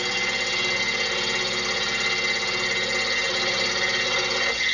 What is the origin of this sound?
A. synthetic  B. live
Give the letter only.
B